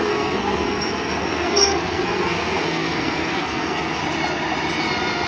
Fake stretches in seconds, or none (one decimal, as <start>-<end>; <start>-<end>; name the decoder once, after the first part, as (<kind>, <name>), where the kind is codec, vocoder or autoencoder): 0.0-4.0 (codec, SNAC)